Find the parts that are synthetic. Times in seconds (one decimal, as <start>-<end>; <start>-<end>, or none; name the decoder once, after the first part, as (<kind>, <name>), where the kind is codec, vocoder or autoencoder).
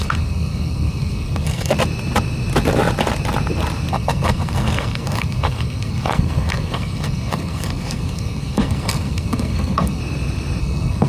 0.0-1.7 (codec, SNAC); 3.9-10.0; 10.6-11.1